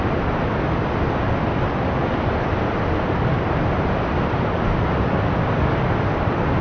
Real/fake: real